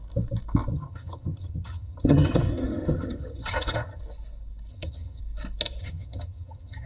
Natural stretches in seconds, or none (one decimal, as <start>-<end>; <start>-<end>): 0.0-0.7; 4.0-4.7; 5.2-5.8